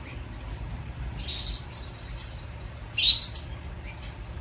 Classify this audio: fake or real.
real